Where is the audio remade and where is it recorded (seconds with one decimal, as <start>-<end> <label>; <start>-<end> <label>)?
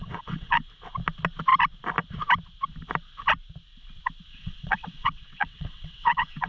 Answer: 0.0-0.6 remade; 0.6-4.3 recorded; 4.3-6.5 remade